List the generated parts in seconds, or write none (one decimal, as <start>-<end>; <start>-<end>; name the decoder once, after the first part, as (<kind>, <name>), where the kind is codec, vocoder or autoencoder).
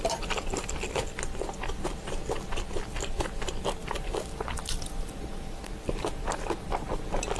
3.8-5.6 (vocoder, BigVGAN v2)